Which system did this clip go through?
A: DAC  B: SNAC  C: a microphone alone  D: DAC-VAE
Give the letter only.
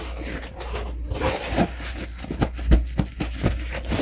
C